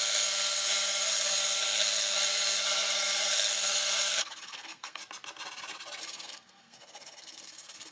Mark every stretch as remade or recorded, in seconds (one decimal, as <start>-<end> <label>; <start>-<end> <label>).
0.0-5.0 remade; 5.0-6.0 recorded; 6.0-7.9 remade